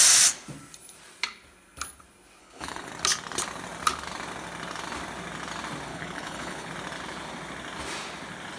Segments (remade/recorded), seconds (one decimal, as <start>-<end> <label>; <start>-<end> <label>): 0.0-2.4 recorded; 2.4-2.9 remade; 2.9-5.9 recorded; 5.9-6.7 remade; 6.7-8.6 recorded